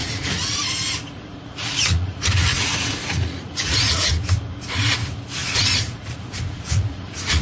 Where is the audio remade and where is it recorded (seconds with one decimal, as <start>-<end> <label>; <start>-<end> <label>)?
0.0-4.1 remade; 4.1-5.4 recorded; 5.4-7.4 remade